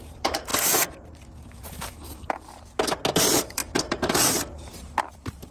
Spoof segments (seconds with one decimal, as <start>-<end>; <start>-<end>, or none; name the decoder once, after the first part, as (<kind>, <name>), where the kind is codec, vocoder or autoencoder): 0.0-0.5 (vocoder, BigVGAN v2); 3.2-5.5